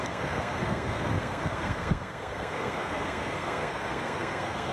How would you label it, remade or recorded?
remade